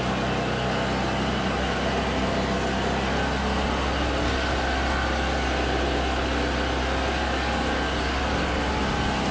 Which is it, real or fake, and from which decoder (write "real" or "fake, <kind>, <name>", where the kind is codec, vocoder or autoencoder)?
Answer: real